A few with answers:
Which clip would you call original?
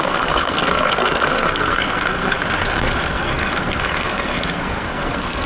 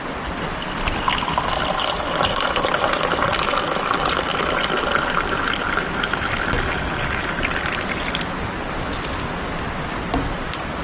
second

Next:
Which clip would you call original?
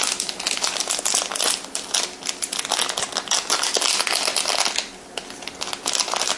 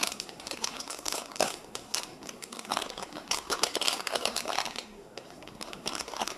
first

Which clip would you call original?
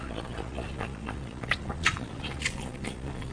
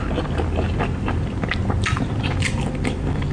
second